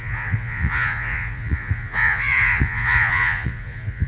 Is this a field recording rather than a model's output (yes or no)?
no